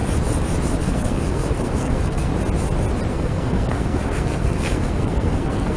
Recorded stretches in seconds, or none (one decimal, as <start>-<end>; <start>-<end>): 0.0-0.8; 2.3-3.1